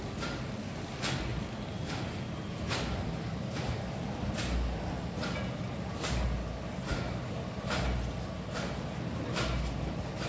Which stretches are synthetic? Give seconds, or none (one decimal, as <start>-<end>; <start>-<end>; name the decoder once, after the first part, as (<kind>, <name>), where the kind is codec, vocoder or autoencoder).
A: none